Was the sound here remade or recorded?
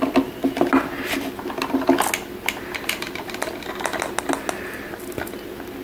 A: recorded